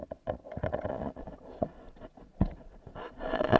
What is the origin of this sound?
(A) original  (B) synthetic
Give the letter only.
B